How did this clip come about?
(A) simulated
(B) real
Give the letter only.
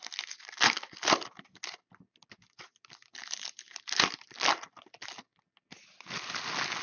B